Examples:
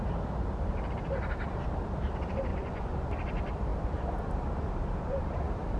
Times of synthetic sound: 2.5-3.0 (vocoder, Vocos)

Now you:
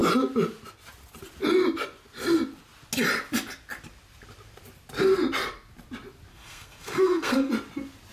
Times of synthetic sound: 6.3-7.5 (codec, SNAC)

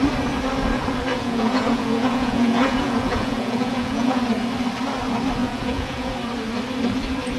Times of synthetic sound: 1.1-4.2 (vocoder, Vocos); 5.4-6.1

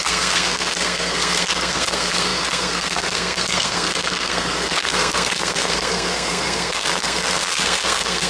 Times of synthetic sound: 0.0-8.3 (codec, SNAC)